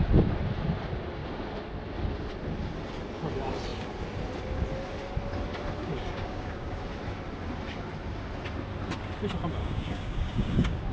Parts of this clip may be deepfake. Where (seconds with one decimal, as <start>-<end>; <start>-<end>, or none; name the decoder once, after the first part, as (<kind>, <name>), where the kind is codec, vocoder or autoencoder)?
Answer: 5.8-6.8 (codec, DAC); 9.6-10.9